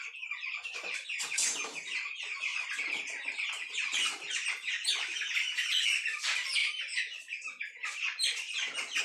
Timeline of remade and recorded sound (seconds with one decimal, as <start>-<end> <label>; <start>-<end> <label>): 0.0-6.6 remade; 6.6-9.0 recorded